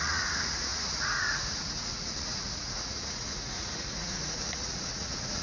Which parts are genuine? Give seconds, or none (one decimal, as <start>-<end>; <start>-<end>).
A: none